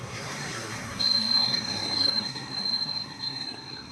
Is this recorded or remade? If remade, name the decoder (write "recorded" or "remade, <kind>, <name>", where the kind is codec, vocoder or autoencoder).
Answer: remade, codec, SNAC